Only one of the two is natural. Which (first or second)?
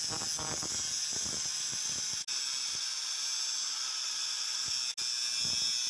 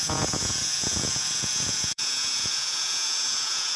first